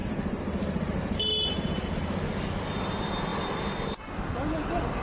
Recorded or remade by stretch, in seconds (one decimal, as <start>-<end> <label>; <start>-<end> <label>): 0.0-5.0 recorded